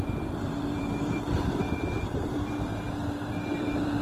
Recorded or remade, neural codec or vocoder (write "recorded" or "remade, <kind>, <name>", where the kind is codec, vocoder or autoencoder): remade, vocoder, BigVGAN v2